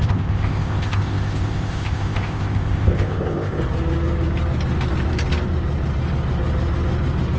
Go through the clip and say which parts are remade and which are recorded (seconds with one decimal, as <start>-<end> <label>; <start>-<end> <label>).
0.0-3.6 remade; 3.6-7.4 recorded